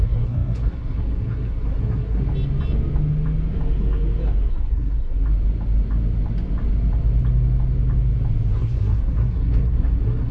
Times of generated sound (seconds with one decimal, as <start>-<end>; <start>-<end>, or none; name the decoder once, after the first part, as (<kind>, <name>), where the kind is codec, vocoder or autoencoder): 0.0-2.2 (codec, SNAC); 4.5-5.2; 8.5-10.3